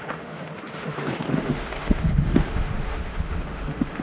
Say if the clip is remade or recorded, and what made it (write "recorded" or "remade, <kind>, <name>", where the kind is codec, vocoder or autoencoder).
remade, autoencoder, DAC-VAE